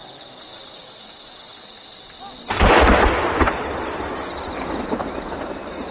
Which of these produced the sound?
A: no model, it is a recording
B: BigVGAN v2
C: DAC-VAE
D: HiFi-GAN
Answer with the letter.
A